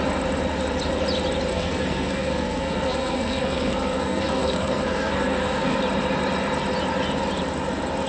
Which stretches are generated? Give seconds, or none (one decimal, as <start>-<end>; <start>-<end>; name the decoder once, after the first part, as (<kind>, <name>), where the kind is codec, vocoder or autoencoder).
1.5-5.8 (codec, SNAC)